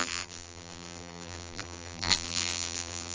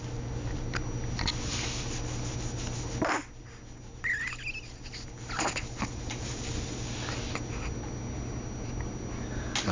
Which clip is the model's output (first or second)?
first